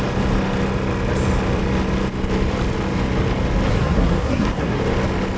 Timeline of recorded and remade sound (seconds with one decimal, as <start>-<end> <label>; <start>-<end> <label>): 0.0-3.7 recorded; 3.7-4.8 remade; 4.8-5.4 recorded